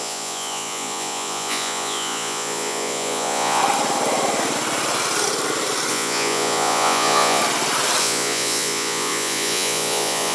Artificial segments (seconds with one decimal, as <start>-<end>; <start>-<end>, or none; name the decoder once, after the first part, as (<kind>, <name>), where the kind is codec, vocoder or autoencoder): 0.0-3.6 (vocoder, Vocos); 5.9-7.4; 8.0-10.3